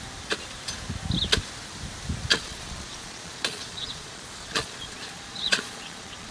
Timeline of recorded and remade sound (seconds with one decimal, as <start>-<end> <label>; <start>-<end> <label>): 0.0-2.3 recorded; 2.3-6.3 remade